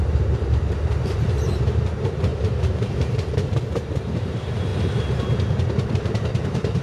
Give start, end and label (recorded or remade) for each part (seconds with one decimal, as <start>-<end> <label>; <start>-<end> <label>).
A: 0.0-4.7 remade; 4.7-5.9 recorded; 5.9-6.8 remade

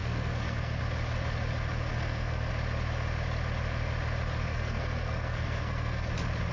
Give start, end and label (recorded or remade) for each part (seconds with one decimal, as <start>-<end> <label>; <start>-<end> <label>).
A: 0.0-0.8 remade; 0.8-1.9 recorded; 1.9-2.5 remade; 2.5-4.5 recorded; 4.5-6.1 remade; 6.1-6.5 recorded

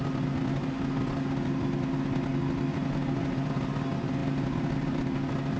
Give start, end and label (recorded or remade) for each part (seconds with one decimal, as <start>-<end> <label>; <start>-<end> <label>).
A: 0.0-5.6 recorded

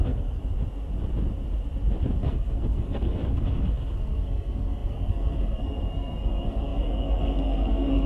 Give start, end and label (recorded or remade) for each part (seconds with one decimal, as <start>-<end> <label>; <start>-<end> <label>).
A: 0.0-0.4 remade; 0.4-2.2 recorded; 2.2-8.1 remade

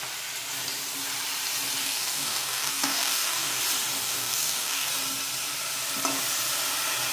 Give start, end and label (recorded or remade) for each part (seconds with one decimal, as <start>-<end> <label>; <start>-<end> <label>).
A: 0.0-1.8 recorded; 1.8-3.6 remade; 3.6-4.0 recorded; 4.0-4.9 remade; 4.9-7.1 recorded

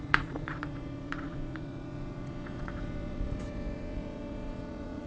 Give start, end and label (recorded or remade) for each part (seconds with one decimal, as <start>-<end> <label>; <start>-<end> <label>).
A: 0.0-5.1 remade

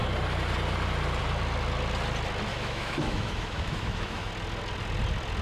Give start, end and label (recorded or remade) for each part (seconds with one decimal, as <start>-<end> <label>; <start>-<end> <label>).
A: 0.0-2.5 recorded; 2.5-4.3 remade; 4.3-5.4 recorded